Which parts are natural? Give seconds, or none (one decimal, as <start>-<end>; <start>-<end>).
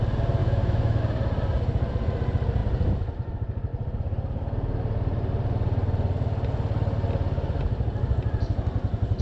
0.0-0.4; 1.0-9.2